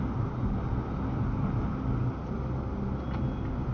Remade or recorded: recorded